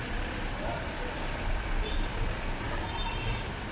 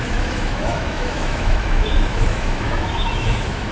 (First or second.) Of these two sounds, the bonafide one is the first